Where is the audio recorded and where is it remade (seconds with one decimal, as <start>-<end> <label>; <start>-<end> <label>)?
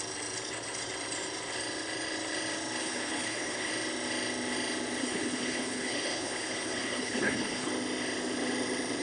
0.0-2.8 recorded; 2.8-3.7 remade; 3.7-5.0 recorded; 5.0-7.7 remade; 7.7-9.0 recorded